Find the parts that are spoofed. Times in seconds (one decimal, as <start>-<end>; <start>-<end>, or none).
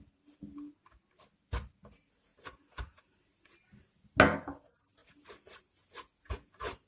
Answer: 2.3-3.0